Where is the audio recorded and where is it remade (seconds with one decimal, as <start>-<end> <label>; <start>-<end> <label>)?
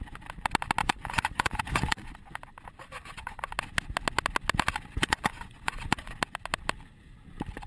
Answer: 0.0-0.8 recorded; 0.8-2.1 remade; 2.1-2.8 recorded; 2.8-3.4 remade; 3.4-5.0 recorded; 5.0-6.1 remade; 6.1-7.7 recorded